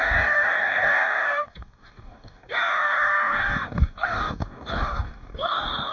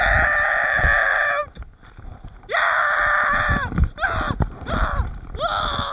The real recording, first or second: second